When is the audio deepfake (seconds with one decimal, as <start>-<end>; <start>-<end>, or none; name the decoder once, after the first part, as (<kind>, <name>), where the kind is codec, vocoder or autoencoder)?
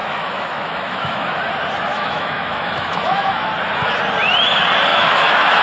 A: 0.0-1.4 (autoencoder, DAC-VAE); 1.9-3.5; 4.9-5.6